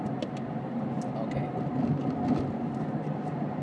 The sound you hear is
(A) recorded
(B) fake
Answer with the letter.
A